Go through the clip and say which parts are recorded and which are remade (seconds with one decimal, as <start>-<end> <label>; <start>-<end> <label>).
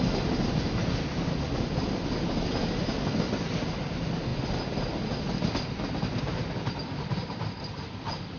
0.0-8.4 recorded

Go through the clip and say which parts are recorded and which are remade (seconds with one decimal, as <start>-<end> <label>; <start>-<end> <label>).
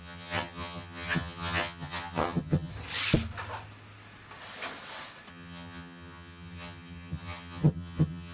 0.0-2.7 remade; 2.7-5.3 recorded; 5.3-8.3 remade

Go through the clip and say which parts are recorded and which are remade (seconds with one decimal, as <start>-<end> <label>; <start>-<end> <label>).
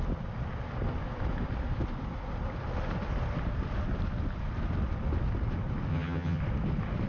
0.0-5.9 recorded; 5.9-6.4 remade; 6.4-7.1 recorded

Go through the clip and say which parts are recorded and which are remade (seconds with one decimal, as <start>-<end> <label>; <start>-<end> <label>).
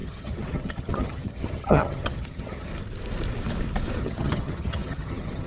0.0-2.7 remade; 2.7-4.0 recorded; 4.0-5.5 remade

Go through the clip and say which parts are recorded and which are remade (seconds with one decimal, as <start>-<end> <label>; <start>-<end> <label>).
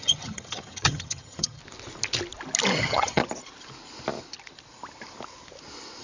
0.0-1.6 remade; 1.6-2.8 recorded; 2.8-3.2 remade; 3.2-6.0 recorded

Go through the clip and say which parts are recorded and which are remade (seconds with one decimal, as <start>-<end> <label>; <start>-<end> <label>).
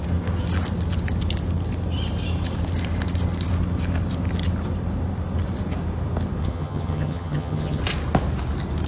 0.0-6.4 recorded; 6.4-7.8 remade; 7.8-8.9 recorded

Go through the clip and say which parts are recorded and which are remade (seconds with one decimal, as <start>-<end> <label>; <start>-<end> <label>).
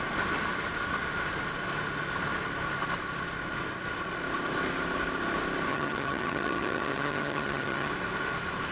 0.0-5.7 recorded; 5.7-7.9 remade; 7.9-8.7 recorded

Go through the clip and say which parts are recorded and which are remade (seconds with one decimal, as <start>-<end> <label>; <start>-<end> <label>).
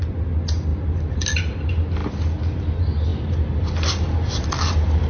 0.0-5.1 recorded